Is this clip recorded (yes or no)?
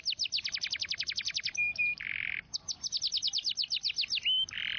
yes